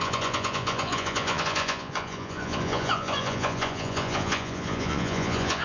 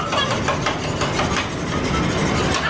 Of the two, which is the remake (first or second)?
first